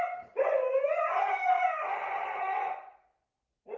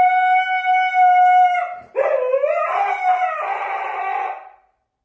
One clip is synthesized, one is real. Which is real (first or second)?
second